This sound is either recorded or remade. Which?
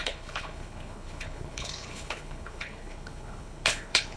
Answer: remade